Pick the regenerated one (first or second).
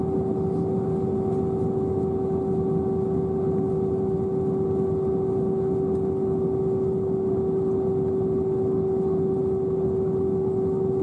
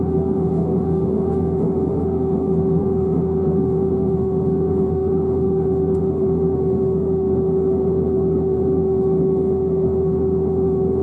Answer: second